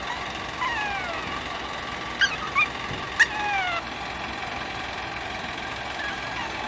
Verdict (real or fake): real